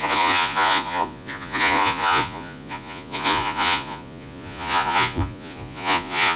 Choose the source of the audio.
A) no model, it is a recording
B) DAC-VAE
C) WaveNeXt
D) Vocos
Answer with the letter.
D